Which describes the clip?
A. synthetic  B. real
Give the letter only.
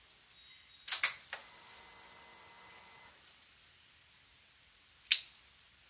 B